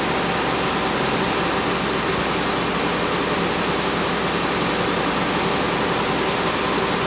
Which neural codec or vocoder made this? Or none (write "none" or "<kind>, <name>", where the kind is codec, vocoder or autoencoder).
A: none